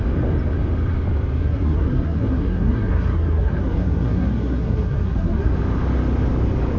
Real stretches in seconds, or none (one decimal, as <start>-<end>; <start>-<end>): 0.0-1.4; 5.5-6.8